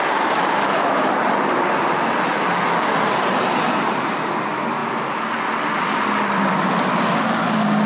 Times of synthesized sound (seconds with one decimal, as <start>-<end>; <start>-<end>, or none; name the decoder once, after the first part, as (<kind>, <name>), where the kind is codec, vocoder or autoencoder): none